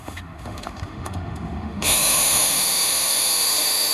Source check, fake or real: fake